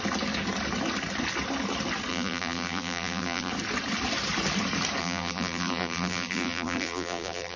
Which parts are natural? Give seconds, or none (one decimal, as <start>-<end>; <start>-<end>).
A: 0.0-2.1; 3.5-5.0